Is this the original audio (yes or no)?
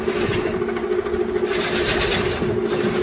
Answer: yes